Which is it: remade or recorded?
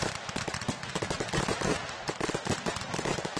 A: recorded